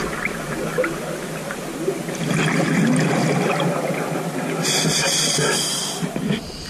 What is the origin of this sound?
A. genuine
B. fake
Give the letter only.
A